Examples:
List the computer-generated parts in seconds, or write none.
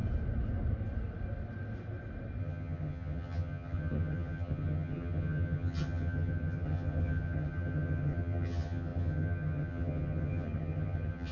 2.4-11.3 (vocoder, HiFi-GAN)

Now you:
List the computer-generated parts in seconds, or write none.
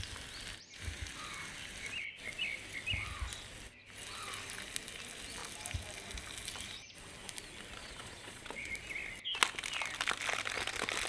7.8-8.7 (vocoder, Vocos)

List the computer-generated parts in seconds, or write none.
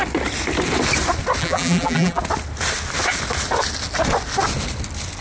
1.4-2.2 (vocoder, BigVGAN v2)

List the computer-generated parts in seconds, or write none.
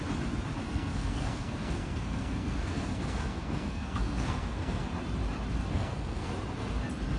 0.6-4.9 (codec, SNAC); 5.6-6.3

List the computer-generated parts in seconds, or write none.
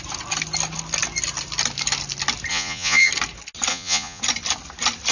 2.5-3.1 (vocoder, Vocos); 3.7-4.2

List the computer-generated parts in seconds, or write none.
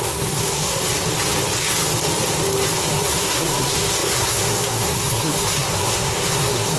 0.0-0.8 (codec, SNAC); 2.9-6.8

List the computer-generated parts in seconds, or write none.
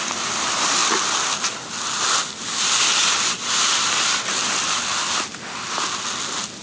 none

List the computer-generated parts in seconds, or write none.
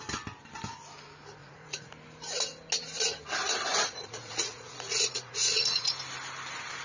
1.4-1.9 (vocoder, Vocos); 3.7-5.9